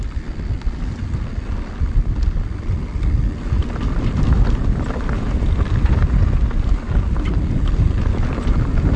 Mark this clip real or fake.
real